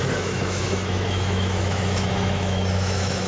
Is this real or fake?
fake